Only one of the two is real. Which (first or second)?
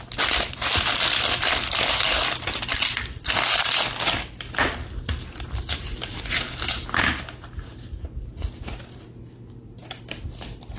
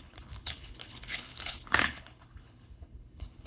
first